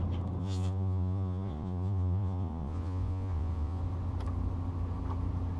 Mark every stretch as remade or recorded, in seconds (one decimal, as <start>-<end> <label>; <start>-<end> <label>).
0.0-0.4 recorded; 0.4-3.8 remade; 3.8-5.6 recorded